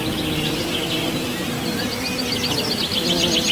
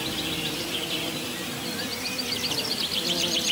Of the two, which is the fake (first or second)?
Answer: second